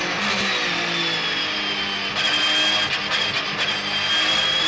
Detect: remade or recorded recorded